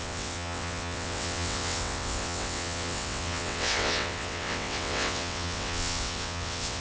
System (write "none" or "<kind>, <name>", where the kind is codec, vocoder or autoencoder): vocoder, WaveNeXt